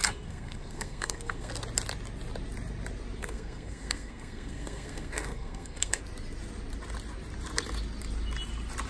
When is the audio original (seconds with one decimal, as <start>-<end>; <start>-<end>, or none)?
1.5-3.2; 6.0-8.9